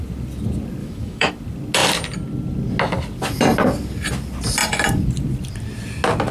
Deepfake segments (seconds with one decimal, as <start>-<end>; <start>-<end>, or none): 0.8-1.3